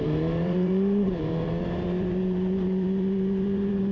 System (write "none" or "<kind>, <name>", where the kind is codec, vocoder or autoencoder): vocoder, BigVGAN v2